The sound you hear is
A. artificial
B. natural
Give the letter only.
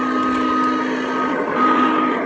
B